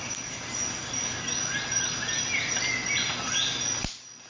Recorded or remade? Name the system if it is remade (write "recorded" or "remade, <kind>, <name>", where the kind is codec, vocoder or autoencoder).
recorded